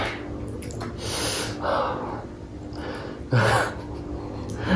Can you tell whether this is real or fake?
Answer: real